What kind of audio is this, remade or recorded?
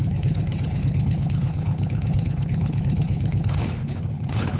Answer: remade